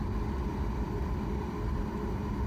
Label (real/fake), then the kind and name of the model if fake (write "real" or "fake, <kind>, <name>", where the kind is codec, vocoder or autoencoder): real